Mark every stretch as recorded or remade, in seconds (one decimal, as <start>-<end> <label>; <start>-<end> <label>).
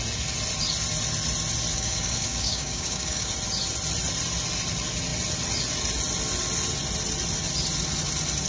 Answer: 0.0-1.7 recorded; 1.7-3.3 remade; 3.3-8.5 recorded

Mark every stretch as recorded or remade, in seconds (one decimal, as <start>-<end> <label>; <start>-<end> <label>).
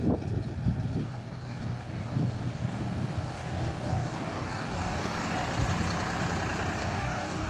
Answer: 0.0-1.0 recorded; 1.0-5.3 remade; 5.3-6.8 recorded; 6.8-7.5 remade